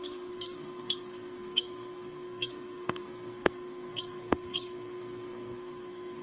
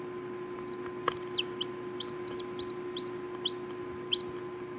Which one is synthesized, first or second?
first